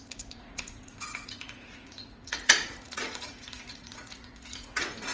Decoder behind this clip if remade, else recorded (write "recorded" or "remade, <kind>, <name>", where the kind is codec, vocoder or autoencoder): remade, vocoder, Vocos